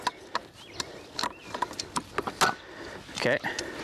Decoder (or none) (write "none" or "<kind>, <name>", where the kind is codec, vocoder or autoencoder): none